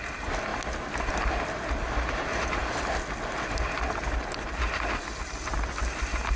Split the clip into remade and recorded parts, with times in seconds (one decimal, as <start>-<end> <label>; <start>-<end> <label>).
0.0-6.4 recorded